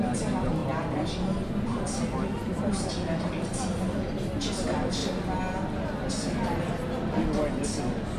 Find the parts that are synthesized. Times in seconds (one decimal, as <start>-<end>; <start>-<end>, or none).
0.0-0.6; 3.2-5.0